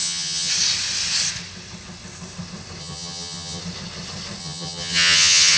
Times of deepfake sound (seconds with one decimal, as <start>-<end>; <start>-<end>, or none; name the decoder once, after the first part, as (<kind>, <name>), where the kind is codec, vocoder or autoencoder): 0.0-0.5 (vocoder, HiFi-GAN); 2.8-3.6; 4.4-5.6